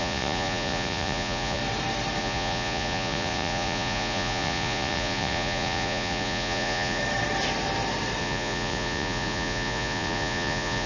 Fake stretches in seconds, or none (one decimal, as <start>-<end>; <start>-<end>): 0.0-1.6; 2.2-7.0; 8.2-10.9